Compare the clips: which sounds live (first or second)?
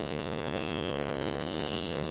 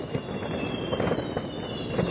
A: second